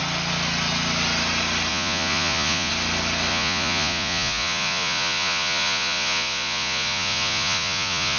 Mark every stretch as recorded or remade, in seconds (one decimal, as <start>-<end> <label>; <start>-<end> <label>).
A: 0.0-1.7 recorded; 1.7-2.7 remade; 2.7-3.3 recorded; 3.3-8.2 remade